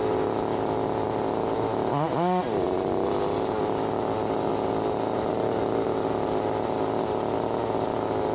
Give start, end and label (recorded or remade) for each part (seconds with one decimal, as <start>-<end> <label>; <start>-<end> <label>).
0.0-8.3 recorded